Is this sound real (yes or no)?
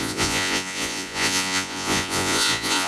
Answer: no